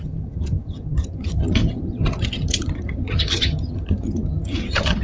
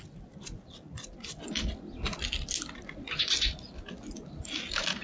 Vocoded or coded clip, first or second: first